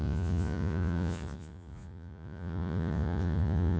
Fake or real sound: fake